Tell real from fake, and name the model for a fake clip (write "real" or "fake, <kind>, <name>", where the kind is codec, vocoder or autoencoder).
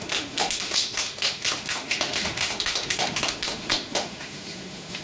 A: fake, autoencoder, DAC-VAE